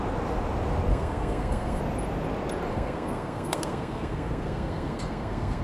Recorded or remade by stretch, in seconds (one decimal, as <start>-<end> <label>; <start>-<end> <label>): 0.0-0.9 recorded; 0.9-1.8 remade; 1.8-2.7 recorded; 2.7-5.6 remade

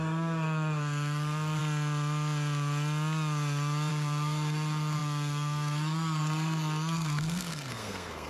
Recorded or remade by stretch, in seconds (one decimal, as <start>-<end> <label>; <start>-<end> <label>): 0.0-1.6 remade; 1.6-3.9 recorded; 3.9-8.3 remade

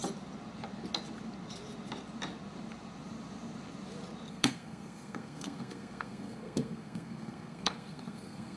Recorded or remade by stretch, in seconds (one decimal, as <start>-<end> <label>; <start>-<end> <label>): 0.0-4.3 recorded; 4.3-8.6 remade

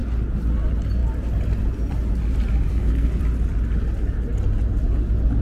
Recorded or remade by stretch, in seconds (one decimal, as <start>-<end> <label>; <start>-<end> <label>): 0.0-2.7 recorded; 2.7-3.2 remade; 3.2-5.4 recorded

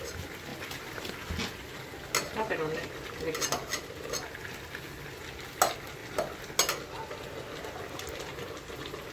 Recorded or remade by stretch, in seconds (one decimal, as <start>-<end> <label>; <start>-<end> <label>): 0.0-9.1 recorded

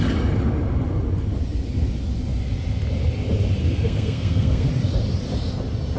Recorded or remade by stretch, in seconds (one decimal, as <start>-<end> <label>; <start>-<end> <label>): 0.0-3.6 recorded; 3.6-4.7 remade; 4.7-6.0 recorded